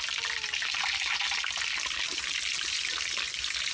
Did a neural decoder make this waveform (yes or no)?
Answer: no